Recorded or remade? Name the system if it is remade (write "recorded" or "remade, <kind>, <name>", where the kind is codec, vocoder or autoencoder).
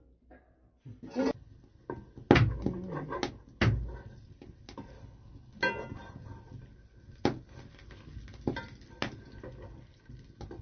recorded